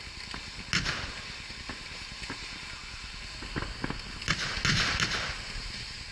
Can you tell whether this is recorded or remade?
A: recorded